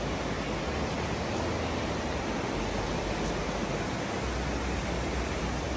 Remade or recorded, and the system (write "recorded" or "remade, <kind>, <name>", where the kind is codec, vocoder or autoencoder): recorded